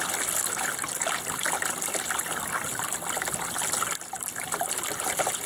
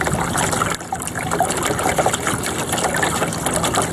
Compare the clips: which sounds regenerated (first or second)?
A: second